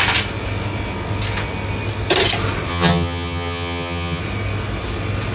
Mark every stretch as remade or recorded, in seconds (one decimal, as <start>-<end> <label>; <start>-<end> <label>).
0.0-2.7 recorded; 2.7-4.2 remade; 4.2-5.3 recorded